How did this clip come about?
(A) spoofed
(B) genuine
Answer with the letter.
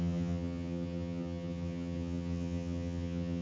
A